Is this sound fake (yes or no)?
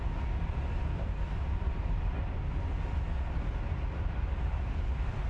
no